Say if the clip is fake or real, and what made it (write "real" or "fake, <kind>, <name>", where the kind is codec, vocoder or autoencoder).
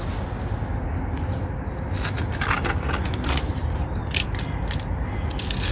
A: real